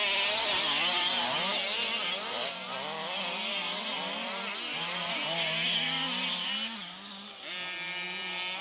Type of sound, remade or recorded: recorded